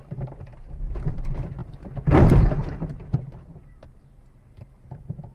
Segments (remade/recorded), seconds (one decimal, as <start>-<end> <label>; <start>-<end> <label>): 0.0-0.5 remade; 0.5-1.2 recorded; 1.2-2.6 remade; 2.6-3.6 recorded; 3.6-5.3 remade